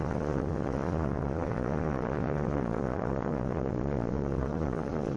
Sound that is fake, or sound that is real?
fake